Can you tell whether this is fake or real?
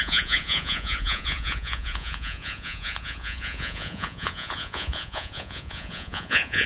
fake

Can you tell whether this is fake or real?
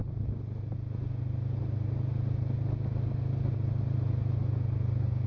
real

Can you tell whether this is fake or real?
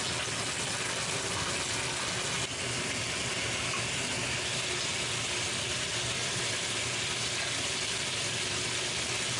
real